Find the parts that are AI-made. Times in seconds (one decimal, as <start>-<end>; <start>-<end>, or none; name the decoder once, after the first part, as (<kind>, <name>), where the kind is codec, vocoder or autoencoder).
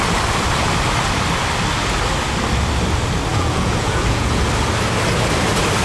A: 3.3-4.4 (vocoder, Vocos)